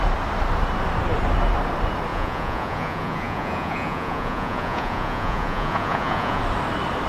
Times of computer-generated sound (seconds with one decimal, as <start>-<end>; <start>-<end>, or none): 2.1-6.4